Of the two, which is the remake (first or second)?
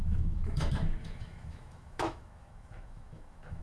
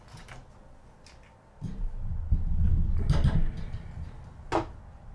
first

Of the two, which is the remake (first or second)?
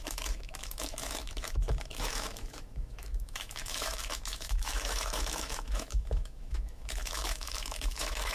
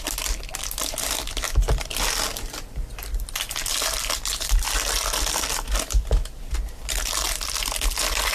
first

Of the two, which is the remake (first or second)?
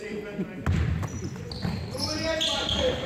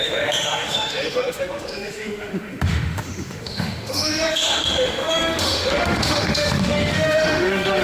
second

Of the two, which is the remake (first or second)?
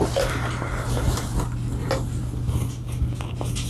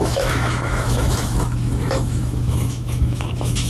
second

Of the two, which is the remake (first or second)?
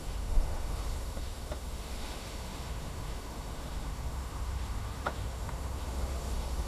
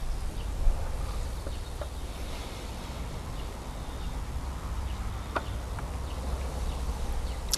first